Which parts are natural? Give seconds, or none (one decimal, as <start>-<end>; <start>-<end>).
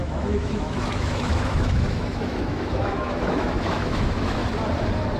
4.4-5.2